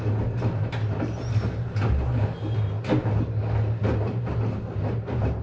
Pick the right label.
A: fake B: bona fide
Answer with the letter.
B